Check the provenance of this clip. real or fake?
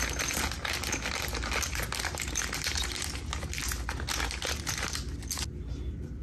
real